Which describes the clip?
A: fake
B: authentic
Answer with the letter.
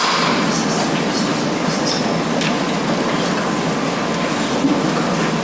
B